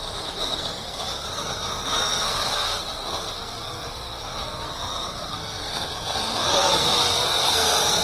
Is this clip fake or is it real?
fake